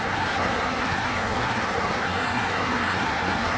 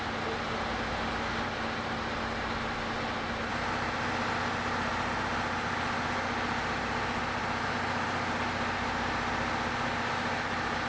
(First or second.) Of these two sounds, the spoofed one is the first